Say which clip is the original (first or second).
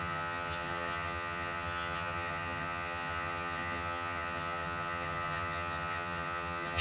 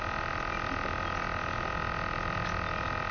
second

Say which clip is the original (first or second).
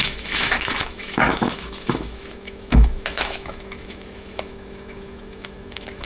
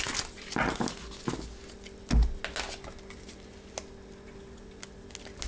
second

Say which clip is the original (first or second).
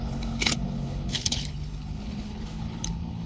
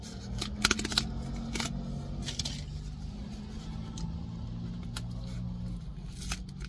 second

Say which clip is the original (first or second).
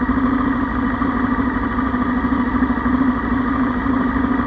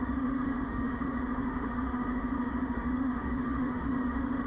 first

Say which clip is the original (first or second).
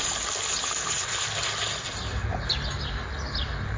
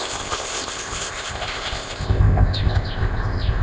first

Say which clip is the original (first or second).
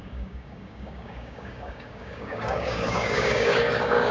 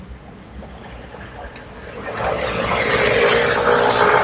second